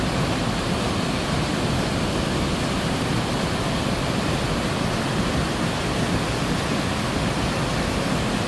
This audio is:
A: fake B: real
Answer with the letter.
B